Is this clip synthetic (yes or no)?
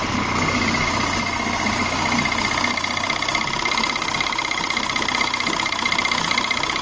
no